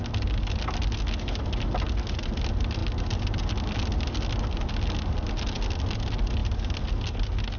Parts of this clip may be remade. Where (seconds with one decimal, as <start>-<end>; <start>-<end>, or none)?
none